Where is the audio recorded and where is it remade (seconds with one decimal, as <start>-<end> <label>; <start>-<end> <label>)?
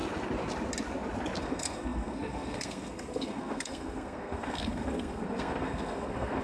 0.0-1.4 recorded; 1.4-6.4 remade